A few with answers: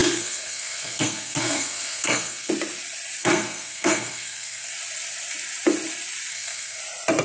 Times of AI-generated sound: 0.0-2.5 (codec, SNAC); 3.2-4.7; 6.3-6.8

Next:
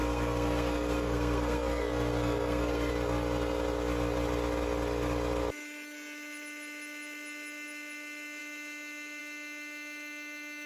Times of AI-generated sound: 0.0-2.9 (codec, SNAC)

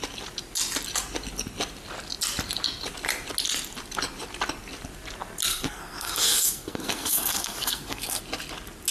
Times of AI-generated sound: 5.5-8.2 (codec, SNAC)

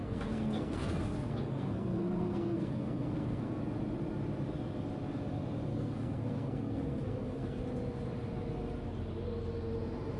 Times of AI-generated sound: 0.0-3.6 (codec, SNAC); 5.7-7.6

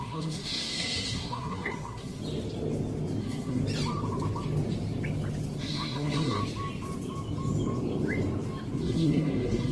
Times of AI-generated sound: 0.0-2.2 (codec, SNAC); 3.2-3.6; 5.6-6.4; 8.8-9.7

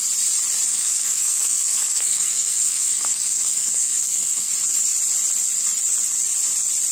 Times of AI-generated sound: 0.7-4.5 (codec, SNAC)